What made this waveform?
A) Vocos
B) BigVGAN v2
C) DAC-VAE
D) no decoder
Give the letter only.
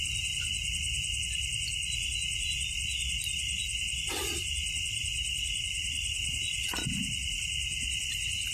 D